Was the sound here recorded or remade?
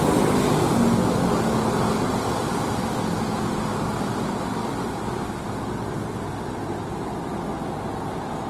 recorded